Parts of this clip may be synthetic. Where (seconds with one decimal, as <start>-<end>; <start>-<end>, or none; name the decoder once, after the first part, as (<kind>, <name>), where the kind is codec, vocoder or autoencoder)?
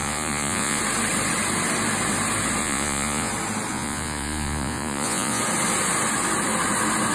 0.0-0.8 (vocoder, Vocos); 2.6-3.3; 3.7-5.4